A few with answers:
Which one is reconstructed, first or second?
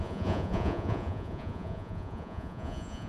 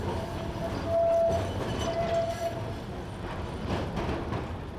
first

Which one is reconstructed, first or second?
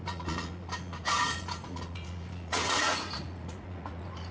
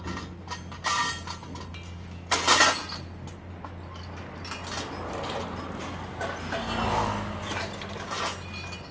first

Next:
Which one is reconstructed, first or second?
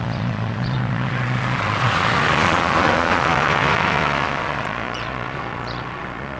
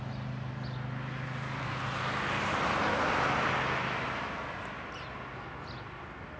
first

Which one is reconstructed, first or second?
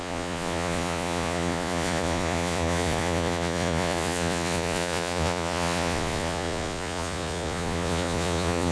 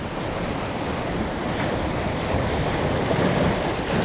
first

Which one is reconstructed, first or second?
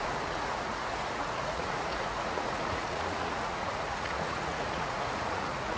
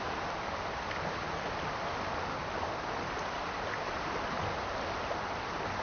first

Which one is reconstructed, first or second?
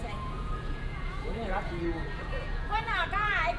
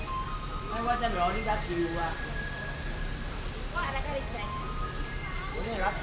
first